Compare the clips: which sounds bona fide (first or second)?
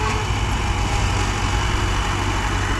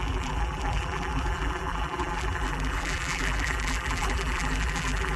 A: first